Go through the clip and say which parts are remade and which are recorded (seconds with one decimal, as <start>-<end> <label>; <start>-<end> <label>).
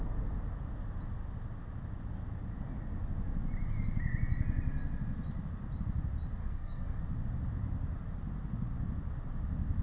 0.0-6.4 recorded; 6.4-7.0 remade; 7.0-9.8 recorded